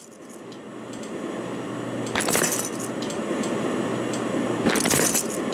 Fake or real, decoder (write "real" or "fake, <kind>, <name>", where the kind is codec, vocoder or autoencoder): real